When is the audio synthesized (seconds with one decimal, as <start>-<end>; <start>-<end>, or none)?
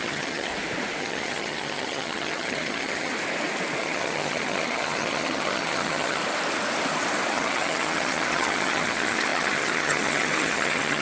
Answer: 0.0-0.5; 1.0-3.1; 3.8-6.2; 7.3-11.0